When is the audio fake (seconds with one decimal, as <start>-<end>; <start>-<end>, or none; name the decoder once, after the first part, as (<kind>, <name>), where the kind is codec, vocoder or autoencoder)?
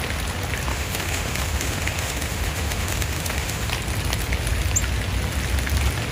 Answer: 0.7-3.7 (autoencoder, DAC-VAE)